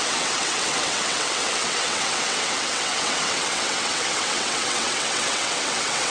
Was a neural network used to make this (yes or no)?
yes